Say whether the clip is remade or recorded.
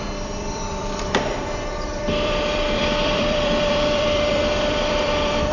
remade